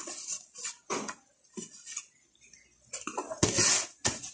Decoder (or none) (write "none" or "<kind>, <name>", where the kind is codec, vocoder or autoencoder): none